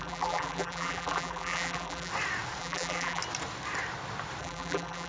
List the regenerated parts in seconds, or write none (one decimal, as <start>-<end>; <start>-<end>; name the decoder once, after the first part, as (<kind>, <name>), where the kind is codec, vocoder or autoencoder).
0.0-2.1 (vocoder, BigVGAN v2); 2.6-3.2; 4.4-5.1